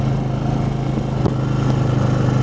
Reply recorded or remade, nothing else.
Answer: recorded